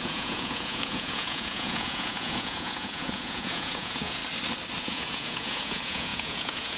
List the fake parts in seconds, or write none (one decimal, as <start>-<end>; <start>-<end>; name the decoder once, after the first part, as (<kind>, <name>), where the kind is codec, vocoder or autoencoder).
0.0-4.2 (vocoder, Vocos); 4.8-6.8